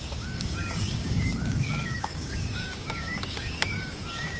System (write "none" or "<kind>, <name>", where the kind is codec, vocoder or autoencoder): codec, DAC